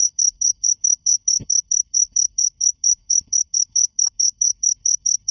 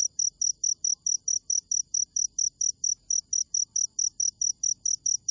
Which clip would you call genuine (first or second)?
second